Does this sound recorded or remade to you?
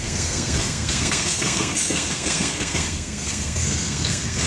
remade